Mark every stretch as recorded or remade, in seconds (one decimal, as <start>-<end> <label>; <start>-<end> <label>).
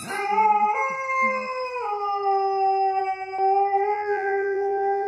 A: 0.0-3.9 recorded; 3.9-5.1 remade